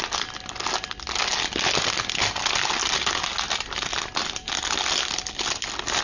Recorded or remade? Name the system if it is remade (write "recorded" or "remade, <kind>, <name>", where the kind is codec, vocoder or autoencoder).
recorded